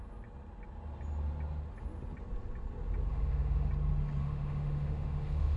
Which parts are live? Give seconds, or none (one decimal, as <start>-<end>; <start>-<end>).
0.0-3.1; 3.7-4.2